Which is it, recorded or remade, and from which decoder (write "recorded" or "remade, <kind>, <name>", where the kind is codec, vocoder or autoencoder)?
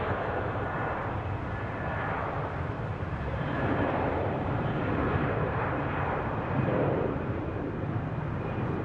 remade, vocoder, BigVGAN v2